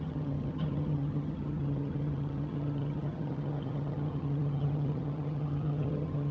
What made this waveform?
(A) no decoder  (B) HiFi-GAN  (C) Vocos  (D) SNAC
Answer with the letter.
B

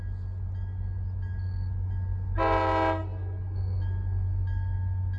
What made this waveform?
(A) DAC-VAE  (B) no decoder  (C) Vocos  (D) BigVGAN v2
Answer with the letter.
B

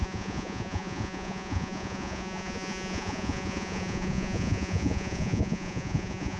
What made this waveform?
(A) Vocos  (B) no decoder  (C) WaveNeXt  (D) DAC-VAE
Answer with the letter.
A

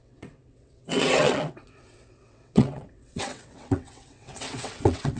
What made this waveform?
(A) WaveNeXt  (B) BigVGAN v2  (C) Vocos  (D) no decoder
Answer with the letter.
A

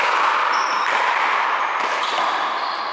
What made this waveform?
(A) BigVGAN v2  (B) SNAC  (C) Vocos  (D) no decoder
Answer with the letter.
D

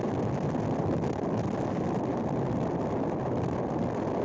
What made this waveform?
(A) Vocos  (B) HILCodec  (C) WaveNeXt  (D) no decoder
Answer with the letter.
D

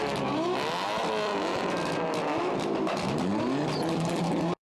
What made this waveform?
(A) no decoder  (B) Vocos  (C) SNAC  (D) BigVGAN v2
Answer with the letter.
A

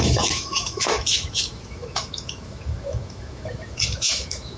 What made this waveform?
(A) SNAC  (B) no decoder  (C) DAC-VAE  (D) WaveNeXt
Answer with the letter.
C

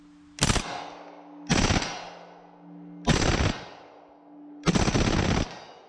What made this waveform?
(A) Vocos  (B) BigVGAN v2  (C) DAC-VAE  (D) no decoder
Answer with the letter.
D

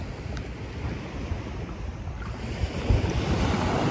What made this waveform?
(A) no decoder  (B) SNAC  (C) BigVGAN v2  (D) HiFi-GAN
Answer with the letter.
A